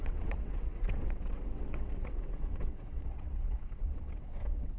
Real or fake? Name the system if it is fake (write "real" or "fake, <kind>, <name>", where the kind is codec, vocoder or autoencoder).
fake, vocoder, WaveNeXt